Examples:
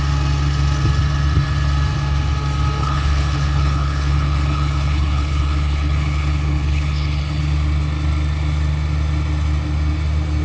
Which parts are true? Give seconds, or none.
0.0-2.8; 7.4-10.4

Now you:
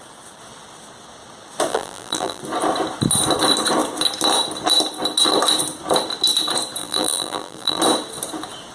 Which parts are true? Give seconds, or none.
0.0-1.7; 2.4-6.8; 7.8-8.7

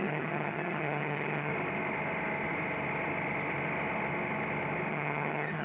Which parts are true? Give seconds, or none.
1.5-4.9

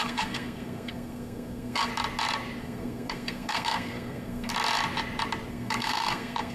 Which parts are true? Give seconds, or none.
1.9-2.6; 4.5-5.5

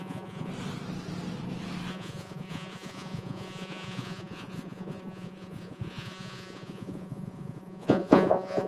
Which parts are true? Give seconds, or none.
0.5-1.9

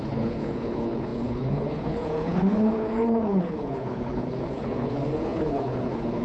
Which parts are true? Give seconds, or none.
none

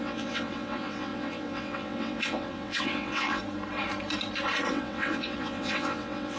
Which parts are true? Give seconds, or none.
3.4-4.7